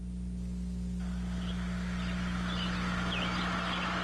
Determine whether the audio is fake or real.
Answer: real